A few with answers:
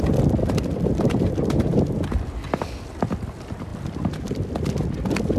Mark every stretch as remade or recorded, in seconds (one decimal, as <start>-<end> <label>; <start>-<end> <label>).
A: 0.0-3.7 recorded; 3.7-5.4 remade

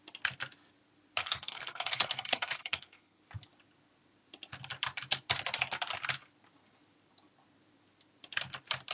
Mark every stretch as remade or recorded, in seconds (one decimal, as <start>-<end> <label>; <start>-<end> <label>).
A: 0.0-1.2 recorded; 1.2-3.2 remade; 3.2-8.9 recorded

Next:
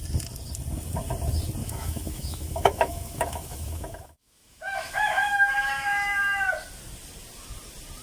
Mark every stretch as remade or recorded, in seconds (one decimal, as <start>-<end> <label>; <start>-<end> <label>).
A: 0.0-1.6 recorded; 1.6-6.4 remade; 6.4-8.0 recorded

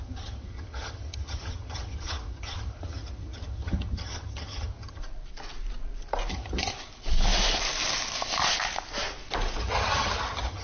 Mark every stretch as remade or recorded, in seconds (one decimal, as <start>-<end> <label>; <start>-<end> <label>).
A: 0.0-5.0 remade; 5.0-6.3 recorded; 6.3-6.7 remade; 6.7-9.6 recorded; 9.6-10.6 remade

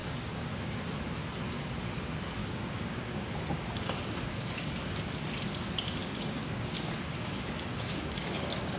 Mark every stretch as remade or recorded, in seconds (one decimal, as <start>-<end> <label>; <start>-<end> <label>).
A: 0.0-0.8 remade; 0.8-2.4 recorded; 2.4-5.1 remade; 5.1-6.0 recorded; 6.0-8.8 remade